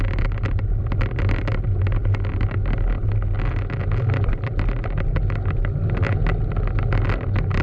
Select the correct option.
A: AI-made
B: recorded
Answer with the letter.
B